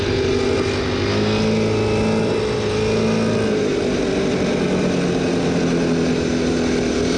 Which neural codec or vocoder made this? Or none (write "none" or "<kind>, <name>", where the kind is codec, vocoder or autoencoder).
none